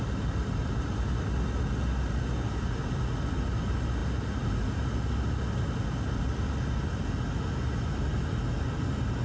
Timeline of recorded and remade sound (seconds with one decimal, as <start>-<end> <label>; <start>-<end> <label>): 0.0-9.2 recorded